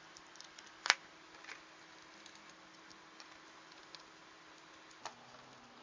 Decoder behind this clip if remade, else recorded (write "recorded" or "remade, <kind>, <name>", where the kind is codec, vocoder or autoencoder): recorded